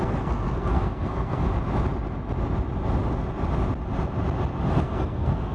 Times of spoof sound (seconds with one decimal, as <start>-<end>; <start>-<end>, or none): 0.0-1.5; 4.8-5.5